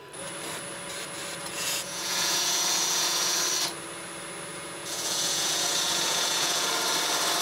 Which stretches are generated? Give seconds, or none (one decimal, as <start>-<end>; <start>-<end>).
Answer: 1.4-3.4; 4.5-6.7

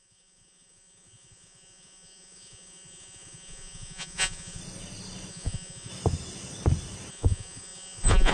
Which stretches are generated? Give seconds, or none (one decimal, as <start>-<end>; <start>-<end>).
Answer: 0.0-4.6; 5.3-5.9; 7.1-8.3